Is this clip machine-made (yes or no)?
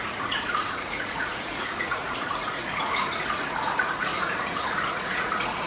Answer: yes